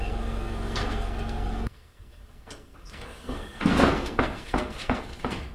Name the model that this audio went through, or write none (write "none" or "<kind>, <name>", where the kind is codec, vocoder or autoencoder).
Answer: codec, SNAC